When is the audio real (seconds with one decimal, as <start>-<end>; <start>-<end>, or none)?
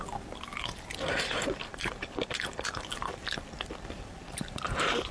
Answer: 0.0-1.1